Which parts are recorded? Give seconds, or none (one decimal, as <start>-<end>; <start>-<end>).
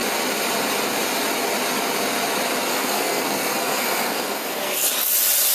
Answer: 0.0-2.7; 4.9-5.5